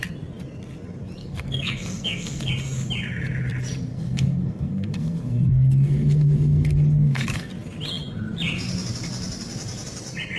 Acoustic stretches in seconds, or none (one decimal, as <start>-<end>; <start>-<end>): 0.0-1.2; 2.5-3.9; 7.5-10.4